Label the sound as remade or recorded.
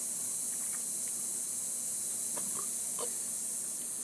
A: recorded